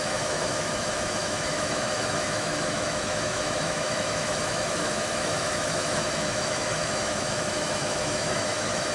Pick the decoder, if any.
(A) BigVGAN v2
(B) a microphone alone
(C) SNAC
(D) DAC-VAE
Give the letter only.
D